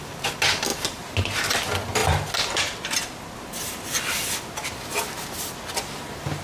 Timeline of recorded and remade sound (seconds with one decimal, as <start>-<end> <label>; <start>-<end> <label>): 0.0-6.4 recorded